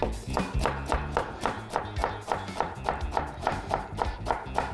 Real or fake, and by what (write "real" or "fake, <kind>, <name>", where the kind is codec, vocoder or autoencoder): real